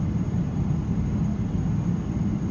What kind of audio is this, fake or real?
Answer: real